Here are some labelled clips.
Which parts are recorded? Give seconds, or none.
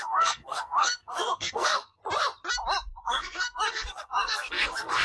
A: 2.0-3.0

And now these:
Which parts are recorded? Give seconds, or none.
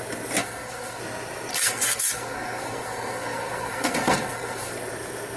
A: 0.0-0.4; 1.0-1.5; 4.7-5.4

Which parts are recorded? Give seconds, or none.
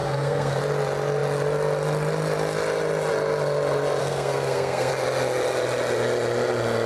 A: 0.6-4.0; 4.9-6.9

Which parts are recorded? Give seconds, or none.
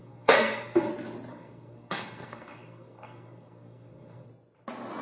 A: 0.9-1.3; 4.3-5.0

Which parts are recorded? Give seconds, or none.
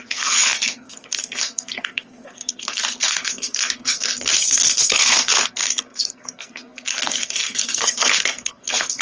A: none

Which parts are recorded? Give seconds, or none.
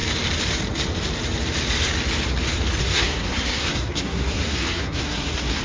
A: 0.0-2.8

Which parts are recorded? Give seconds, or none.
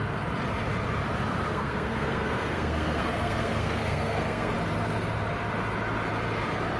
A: 0.0-1.5; 4.5-6.8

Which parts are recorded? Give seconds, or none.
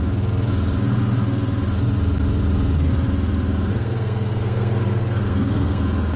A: 0.0-3.7; 5.8-6.2